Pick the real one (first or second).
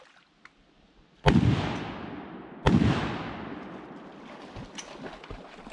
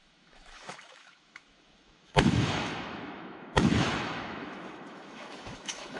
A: first